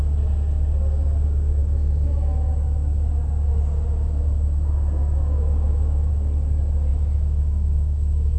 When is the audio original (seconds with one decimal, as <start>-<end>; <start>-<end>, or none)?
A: 0.0-1.6; 2.5-5.0; 6.1-6.9